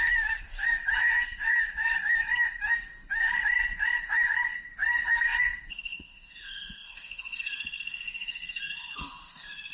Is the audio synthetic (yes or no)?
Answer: yes